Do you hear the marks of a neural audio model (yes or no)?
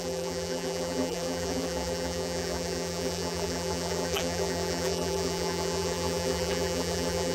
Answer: yes